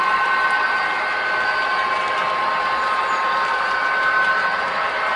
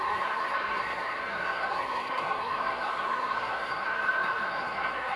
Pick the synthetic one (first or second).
second